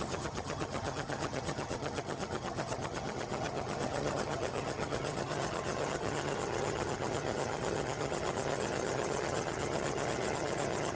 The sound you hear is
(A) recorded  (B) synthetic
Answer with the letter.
B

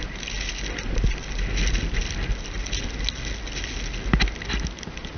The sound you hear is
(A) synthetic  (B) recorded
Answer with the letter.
B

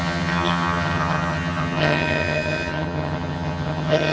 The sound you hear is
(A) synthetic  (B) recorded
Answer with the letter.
A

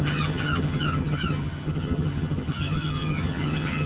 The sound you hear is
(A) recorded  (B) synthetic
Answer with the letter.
B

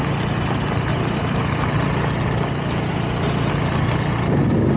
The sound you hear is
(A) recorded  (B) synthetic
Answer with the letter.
A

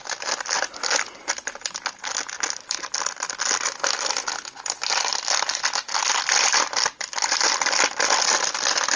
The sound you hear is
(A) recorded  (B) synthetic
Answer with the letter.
A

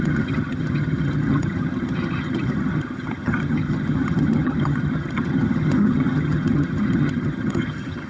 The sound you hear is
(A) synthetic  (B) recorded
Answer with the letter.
A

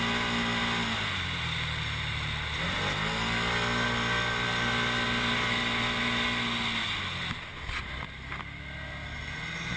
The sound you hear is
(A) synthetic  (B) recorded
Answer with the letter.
B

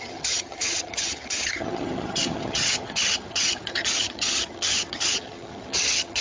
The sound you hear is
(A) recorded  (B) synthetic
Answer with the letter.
B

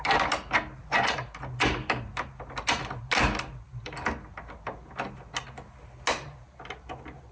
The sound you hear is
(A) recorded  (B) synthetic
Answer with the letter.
A